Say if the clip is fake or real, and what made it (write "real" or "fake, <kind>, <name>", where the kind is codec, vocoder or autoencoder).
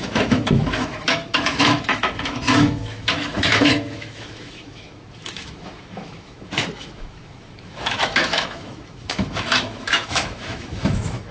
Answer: fake, autoencoder, DAC-VAE